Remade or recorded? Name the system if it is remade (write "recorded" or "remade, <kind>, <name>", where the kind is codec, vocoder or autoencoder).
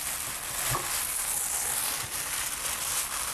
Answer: recorded